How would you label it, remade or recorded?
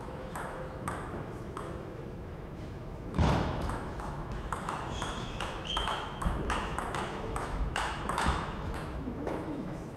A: remade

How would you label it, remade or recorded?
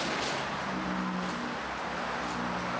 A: recorded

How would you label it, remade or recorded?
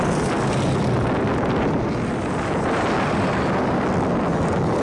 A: recorded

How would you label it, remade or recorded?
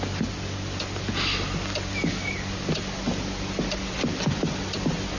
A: recorded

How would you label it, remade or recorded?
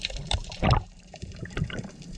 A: remade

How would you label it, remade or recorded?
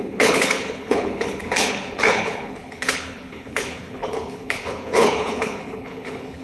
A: remade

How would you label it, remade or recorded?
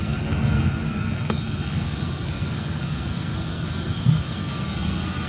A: remade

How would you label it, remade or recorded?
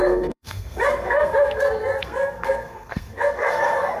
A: remade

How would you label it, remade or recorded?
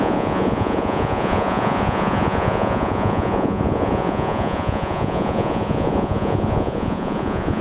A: remade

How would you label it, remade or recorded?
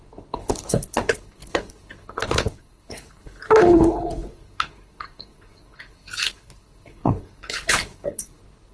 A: remade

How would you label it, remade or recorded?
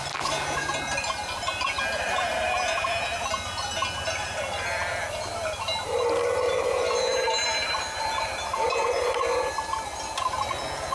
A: recorded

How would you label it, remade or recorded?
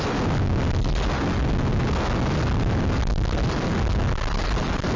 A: recorded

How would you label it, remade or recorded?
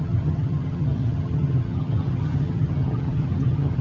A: remade